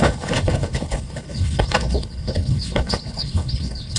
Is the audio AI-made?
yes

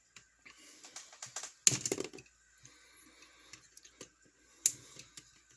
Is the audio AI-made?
no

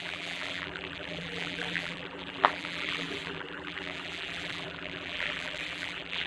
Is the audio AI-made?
yes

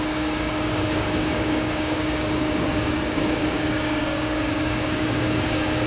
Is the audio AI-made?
yes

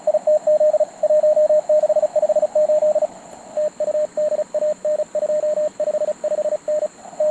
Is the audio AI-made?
no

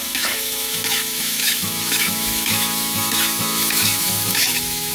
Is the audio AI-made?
yes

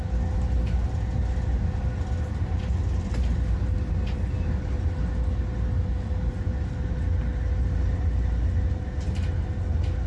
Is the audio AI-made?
no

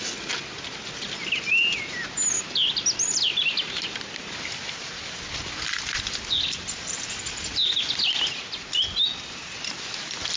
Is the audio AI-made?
no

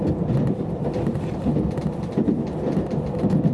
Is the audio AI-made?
no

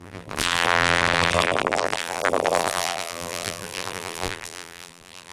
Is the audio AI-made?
yes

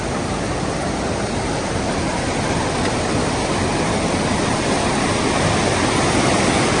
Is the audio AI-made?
no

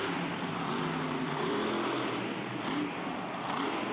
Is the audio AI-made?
no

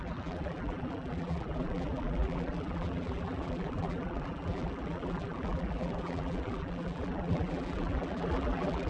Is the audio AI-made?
yes